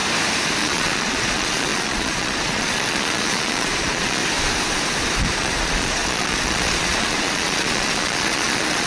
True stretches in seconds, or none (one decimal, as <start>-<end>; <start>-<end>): 0.0-0.6; 4.2-5.2